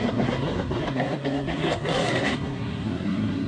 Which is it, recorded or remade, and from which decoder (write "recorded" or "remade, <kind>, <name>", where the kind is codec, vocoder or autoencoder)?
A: remade, codec, SNAC